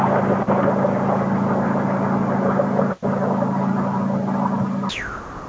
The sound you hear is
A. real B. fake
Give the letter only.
A